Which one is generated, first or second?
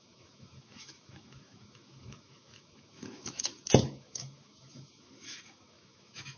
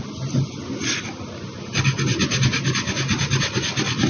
first